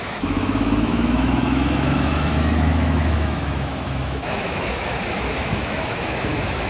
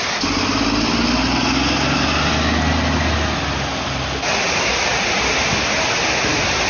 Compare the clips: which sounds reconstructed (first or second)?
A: first